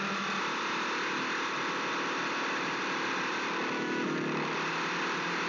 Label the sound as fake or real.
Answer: real